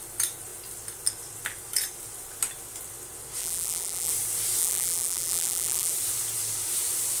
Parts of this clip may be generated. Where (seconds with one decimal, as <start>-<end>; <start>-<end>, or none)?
3.4-4.1; 4.6-5.9